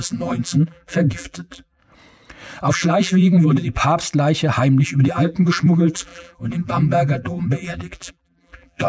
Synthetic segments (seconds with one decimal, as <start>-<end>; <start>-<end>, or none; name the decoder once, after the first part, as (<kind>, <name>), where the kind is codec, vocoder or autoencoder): 0.0-1.8 (vocoder, BigVGAN v2); 2.7-3.8; 4.8-8.9